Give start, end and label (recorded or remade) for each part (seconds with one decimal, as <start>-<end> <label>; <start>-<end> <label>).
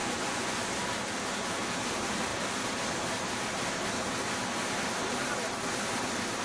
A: 0.0-0.6 remade; 0.6-6.4 recorded